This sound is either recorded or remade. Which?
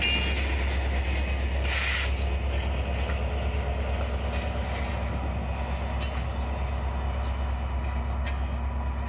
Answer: recorded